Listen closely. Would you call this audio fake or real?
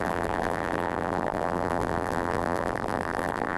fake